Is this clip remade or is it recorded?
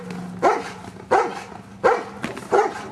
recorded